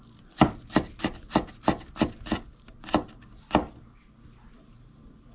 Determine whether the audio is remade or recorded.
recorded